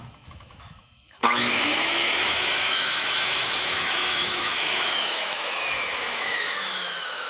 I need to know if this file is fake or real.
fake